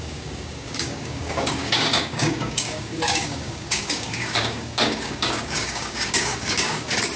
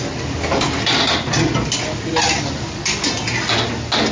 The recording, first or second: second